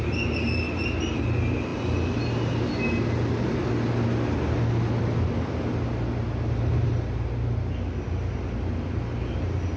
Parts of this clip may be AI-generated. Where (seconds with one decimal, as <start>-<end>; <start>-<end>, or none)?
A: none